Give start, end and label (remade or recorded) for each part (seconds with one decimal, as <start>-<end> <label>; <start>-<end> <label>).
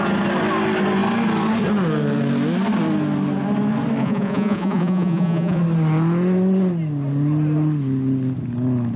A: 0.0-4.0 recorded; 4.0-5.6 remade; 5.6-9.0 recorded